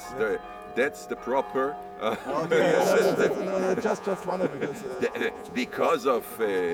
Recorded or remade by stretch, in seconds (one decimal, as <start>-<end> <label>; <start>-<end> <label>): 0.0-2.7 recorded; 2.7-5.9 remade; 5.9-6.7 recorded